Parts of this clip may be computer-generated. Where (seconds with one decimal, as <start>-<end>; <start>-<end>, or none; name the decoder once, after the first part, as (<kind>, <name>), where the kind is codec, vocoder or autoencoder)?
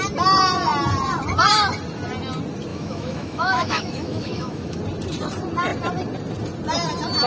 2.7-4.8 (autoencoder, DAC-VAE)